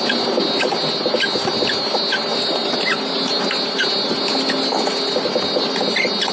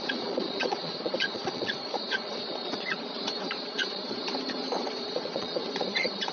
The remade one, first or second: second